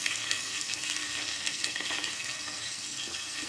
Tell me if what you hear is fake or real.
fake